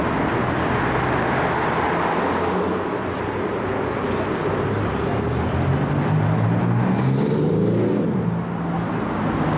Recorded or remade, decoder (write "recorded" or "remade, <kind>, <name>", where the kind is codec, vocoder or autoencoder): recorded